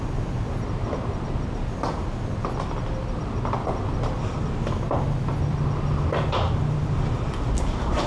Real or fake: real